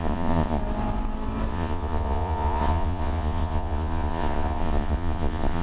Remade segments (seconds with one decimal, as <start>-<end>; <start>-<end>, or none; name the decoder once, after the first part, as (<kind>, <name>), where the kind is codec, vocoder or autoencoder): 0.0-0.6 (vocoder, Vocos); 1.5-5.6